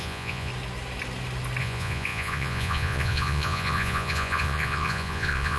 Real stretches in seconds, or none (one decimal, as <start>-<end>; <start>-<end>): 0.5-1.6